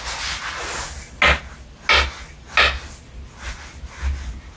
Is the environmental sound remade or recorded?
recorded